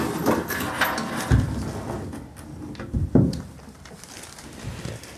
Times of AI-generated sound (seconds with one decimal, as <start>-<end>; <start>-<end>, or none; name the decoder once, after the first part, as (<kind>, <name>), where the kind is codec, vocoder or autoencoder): 3.0-3.8 (vocoder, BigVGAN v2)